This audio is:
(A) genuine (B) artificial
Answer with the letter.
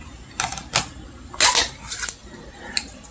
A